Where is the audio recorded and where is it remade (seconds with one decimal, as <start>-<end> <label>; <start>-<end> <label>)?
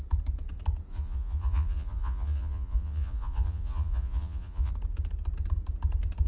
0.0-0.9 recorded; 0.9-4.7 remade; 4.7-6.3 recorded